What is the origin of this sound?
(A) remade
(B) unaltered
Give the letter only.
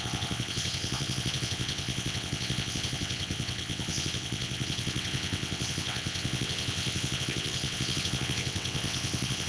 A